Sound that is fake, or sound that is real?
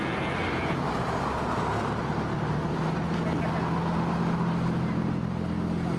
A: real